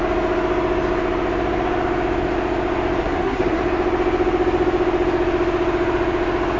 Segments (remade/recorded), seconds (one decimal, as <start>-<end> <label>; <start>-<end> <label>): 0.0-3.0 recorded; 3.0-3.6 remade; 3.6-6.6 recorded